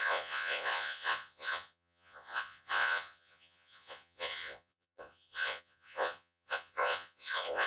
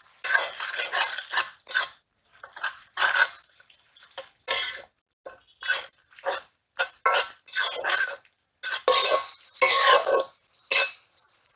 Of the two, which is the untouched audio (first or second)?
second